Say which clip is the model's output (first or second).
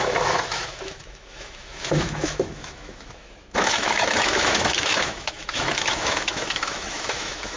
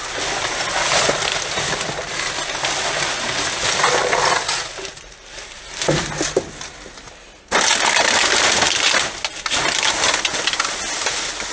first